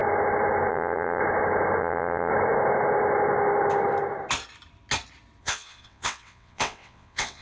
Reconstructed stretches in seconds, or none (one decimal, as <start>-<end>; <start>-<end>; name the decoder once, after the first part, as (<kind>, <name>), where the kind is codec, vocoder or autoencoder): 0.7-1.2 (vocoder, WaveNeXt); 1.8-2.3; 5.4-7.4